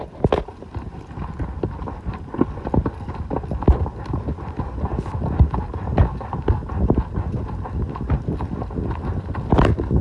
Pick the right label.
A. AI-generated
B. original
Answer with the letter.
B